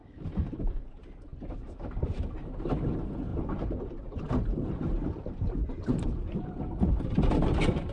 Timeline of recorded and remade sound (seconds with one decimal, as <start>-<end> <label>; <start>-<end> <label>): 0.0-0.8 remade; 0.8-3.3 recorded; 3.3-4.2 remade; 4.2-5.6 recorded; 5.6-6.6 remade; 6.6-7.9 recorded